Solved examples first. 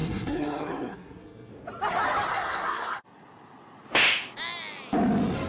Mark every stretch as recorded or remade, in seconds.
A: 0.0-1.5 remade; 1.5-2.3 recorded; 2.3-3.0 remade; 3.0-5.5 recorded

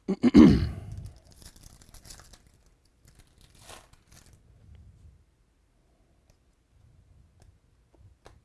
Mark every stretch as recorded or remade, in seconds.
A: 0.0-8.4 recorded

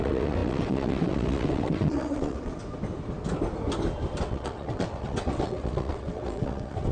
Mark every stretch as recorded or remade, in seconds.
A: 0.0-2.5 remade; 2.5-4.2 recorded; 4.2-6.9 remade